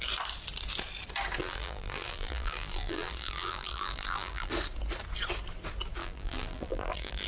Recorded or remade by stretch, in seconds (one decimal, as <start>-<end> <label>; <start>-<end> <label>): 0.0-1.4 recorded; 1.4-4.5 remade; 4.5-6.0 recorded; 6.0-7.3 remade

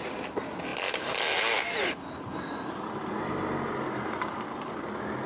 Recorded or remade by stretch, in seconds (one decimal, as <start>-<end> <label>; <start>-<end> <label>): 0.0-5.3 recorded

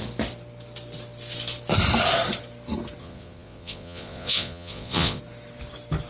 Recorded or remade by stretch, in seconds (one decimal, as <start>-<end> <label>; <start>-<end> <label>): 0.0-3.0 recorded; 3.0-5.2 remade; 5.2-6.1 recorded

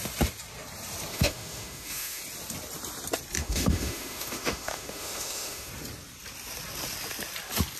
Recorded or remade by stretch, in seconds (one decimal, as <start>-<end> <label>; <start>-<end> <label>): 0.0-1.1 recorded; 1.1-2.2 remade; 2.2-3.4 recorded; 3.4-5.7 remade; 5.7-7.8 recorded

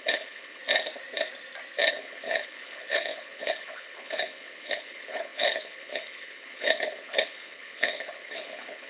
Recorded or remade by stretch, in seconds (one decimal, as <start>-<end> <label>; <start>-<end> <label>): 0.0-0.6 remade; 0.6-1.9 recorded; 1.9-8.9 remade